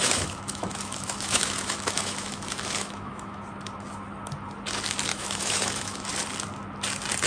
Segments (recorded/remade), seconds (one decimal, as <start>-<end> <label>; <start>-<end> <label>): 0.0-3.4 remade; 3.4-5.1 recorded; 5.1-6.1 remade; 6.1-7.3 recorded